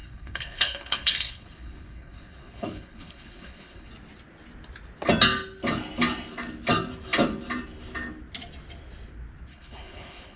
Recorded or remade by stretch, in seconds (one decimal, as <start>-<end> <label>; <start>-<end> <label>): 0.0-3.9 remade; 3.9-9.5 recorded; 9.5-10.4 remade